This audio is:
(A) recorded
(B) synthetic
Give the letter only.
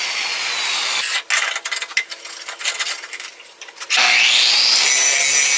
A